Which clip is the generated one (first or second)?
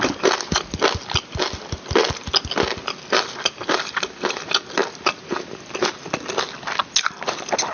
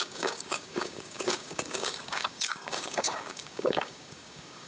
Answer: second